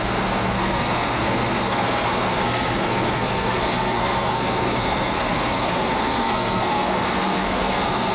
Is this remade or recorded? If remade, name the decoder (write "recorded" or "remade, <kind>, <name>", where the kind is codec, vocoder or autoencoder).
remade, codec, SNAC